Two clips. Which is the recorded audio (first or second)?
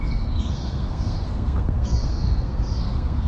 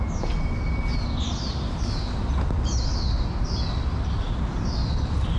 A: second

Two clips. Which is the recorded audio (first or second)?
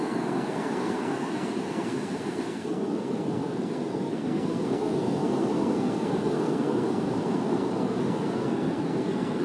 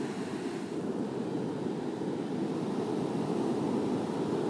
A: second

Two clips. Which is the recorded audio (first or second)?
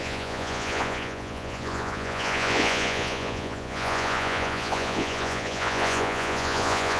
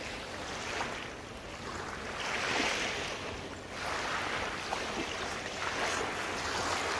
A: second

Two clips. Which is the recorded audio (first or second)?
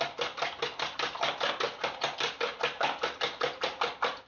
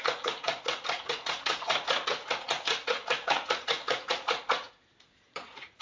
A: first